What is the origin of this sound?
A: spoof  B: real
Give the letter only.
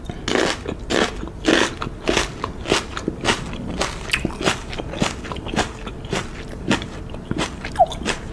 B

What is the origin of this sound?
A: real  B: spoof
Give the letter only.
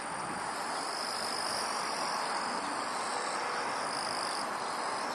A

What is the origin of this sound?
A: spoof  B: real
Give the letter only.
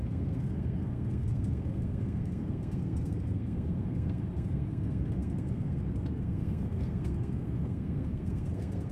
A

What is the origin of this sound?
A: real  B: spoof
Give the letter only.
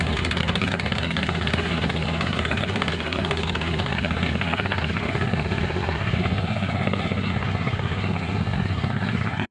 B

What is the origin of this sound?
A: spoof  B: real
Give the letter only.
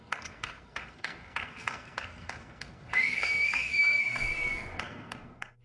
A